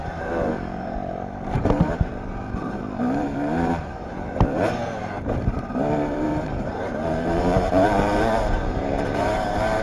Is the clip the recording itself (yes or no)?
no